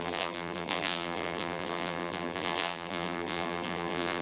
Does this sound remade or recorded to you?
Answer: remade